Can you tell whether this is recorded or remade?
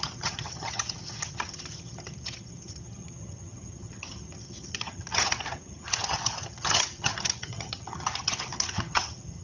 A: remade